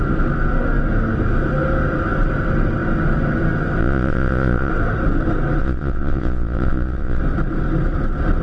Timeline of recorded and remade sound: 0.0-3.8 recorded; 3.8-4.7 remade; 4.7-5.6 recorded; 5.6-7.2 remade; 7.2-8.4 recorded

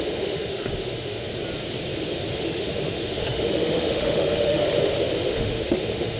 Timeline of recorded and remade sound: 0.0-1.3 remade; 1.3-2.3 recorded; 2.3-4.6 remade; 4.6-5.2 recorded; 5.2-6.2 remade

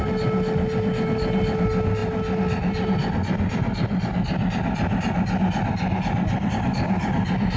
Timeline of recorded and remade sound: 0.0-7.6 recorded

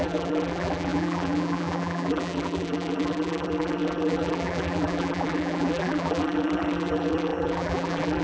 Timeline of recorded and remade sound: 0.0-8.2 remade

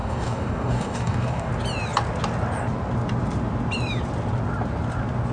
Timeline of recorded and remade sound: 0.0-1.5 remade; 1.5-5.3 recorded

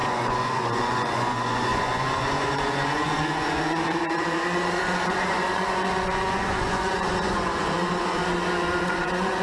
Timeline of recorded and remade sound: 0.0-8.2 remade; 8.2-8.8 recorded; 8.8-9.4 remade

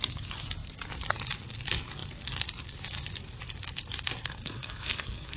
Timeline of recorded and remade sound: 0.0-4.2 recorded; 4.2-5.4 remade

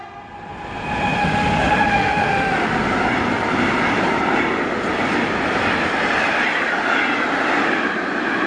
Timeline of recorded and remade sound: 0.0-1.2 recorded; 1.2-2.7 remade; 2.7-8.5 recorded